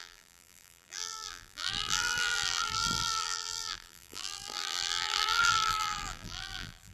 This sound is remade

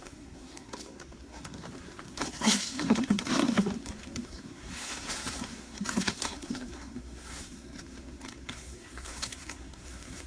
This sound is remade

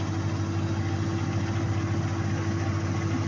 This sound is recorded